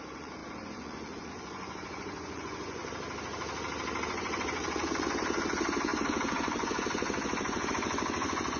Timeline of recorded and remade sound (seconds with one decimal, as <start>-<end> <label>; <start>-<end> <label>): 0.0-2.8 remade; 2.8-4.1 recorded; 4.1-8.6 remade